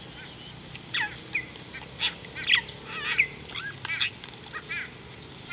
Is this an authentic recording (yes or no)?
yes